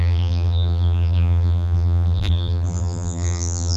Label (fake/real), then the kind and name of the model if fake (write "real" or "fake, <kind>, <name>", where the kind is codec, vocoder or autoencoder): fake, vocoder, BigVGAN v2